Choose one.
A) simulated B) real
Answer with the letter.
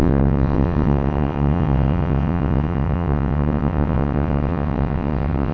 A